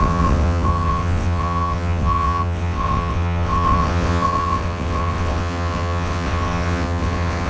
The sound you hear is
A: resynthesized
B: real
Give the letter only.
A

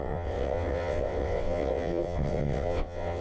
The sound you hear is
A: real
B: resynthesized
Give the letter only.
B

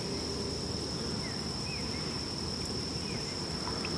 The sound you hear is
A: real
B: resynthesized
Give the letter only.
A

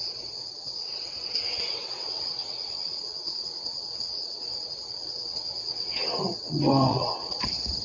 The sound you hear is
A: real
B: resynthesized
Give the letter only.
B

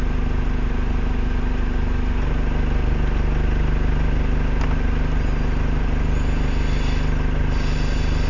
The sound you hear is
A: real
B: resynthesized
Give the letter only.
A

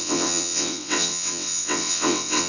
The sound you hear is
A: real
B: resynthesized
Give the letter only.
B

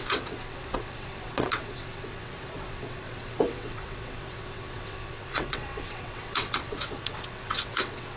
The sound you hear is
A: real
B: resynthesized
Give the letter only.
B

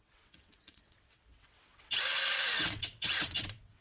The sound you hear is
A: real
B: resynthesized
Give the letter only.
B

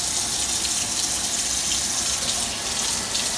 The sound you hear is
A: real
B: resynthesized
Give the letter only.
A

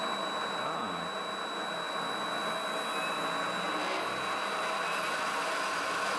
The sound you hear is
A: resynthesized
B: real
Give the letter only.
B